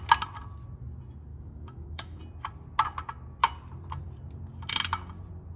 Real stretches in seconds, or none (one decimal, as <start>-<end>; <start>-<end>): 0.0-1.3; 2.2-5.6